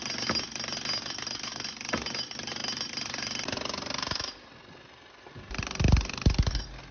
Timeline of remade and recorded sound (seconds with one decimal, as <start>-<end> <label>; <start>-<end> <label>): 0.0-6.9 recorded

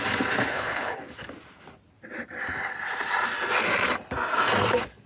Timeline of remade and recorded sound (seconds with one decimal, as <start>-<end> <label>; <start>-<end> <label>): 0.0-0.5 recorded; 0.5-1.0 remade; 1.0-5.1 recorded

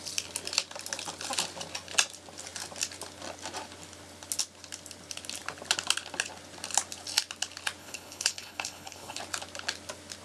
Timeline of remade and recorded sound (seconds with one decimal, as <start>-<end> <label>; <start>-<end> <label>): 0.0-7.8 recorded; 7.8-9.2 remade; 9.2-10.2 recorded

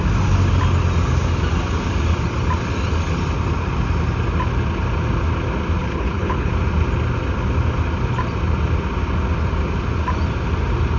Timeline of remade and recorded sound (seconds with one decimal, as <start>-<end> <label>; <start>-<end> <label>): 0.0-5.8 recorded; 5.8-6.5 remade; 6.5-11.0 recorded

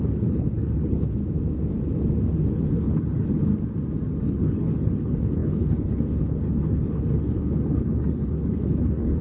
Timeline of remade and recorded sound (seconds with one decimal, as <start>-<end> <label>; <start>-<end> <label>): 0.0-1.2 remade; 1.2-2.7 recorded; 2.7-3.5 remade; 3.5-4.2 recorded; 4.2-9.2 remade

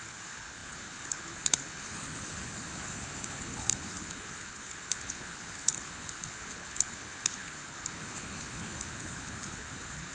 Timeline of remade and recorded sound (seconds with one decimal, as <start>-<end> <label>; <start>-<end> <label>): 0.0-10.1 remade